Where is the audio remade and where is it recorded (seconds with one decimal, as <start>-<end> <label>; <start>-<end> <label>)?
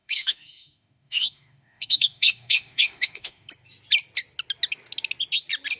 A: 0.0-3.5 remade; 3.5-5.8 recorded